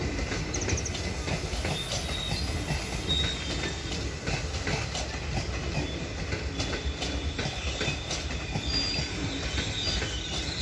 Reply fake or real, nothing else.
real